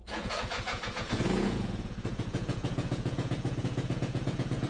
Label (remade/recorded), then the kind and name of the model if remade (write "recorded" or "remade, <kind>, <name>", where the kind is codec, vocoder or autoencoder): remade, vocoder, Vocos